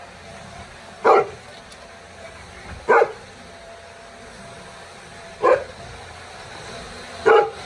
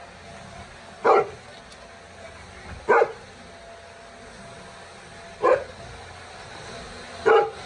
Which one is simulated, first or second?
first